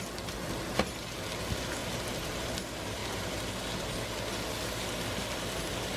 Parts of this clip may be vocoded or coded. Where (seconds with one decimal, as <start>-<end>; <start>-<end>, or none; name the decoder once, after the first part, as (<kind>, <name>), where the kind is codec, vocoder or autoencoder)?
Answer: none